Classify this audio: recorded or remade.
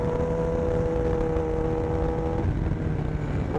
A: recorded